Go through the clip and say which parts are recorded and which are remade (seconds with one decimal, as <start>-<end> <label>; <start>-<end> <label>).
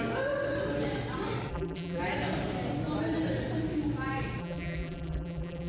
0.0-1.5 recorded; 1.5-2.0 remade; 2.0-4.4 recorded; 4.4-5.7 remade